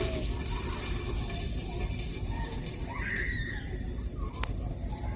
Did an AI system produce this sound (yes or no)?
no